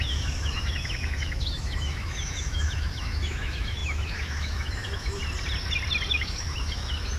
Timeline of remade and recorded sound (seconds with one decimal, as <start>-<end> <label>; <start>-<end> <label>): 0.0-5.2 remade; 5.2-6.1 recorded; 6.1-7.2 remade